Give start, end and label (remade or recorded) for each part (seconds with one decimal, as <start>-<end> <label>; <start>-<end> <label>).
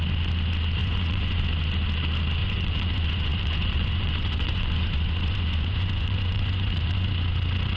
0.0-0.8 recorded; 0.8-1.4 remade; 1.4-2.4 recorded; 2.4-7.1 remade; 7.1-7.8 recorded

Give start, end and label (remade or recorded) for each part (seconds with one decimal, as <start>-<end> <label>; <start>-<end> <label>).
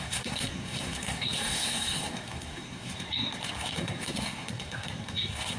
0.0-5.6 remade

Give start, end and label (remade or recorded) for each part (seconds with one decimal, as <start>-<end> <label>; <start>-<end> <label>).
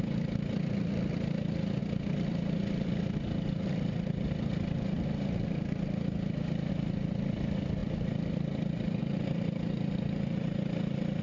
0.0-11.2 recorded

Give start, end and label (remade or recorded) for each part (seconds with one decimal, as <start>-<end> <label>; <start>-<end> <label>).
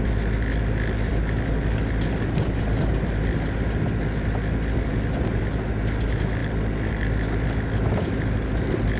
0.0-9.0 recorded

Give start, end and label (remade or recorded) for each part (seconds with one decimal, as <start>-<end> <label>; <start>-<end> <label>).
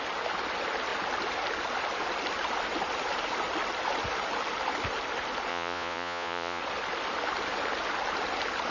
0.0-5.5 recorded; 5.5-6.6 remade; 6.6-8.7 recorded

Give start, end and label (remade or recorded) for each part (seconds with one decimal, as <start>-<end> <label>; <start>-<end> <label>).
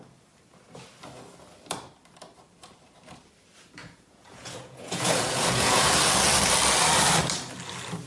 0.0-3.8 recorded; 3.8-5.9 remade; 5.9-8.1 recorded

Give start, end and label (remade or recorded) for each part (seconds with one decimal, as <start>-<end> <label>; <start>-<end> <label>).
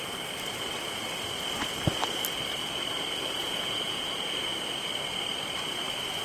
0.0-3.4 recorded; 3.4-4.1 remade; 4.1-6.2 recorded